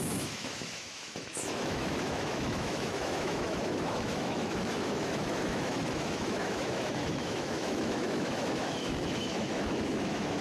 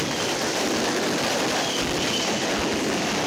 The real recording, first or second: second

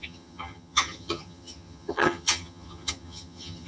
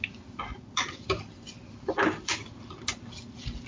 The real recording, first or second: second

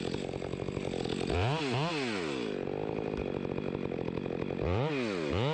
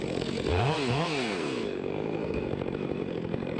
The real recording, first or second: first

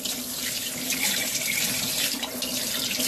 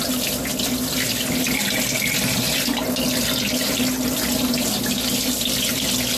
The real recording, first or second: second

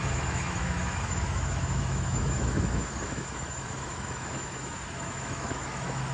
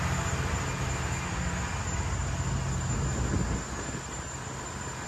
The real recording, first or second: second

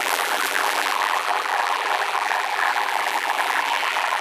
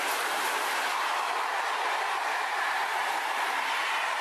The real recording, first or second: second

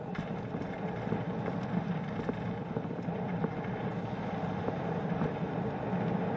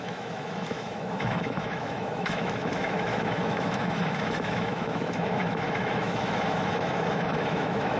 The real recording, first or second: first